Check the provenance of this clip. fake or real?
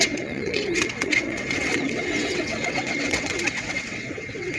fake